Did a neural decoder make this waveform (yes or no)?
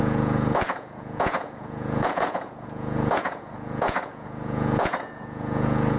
yes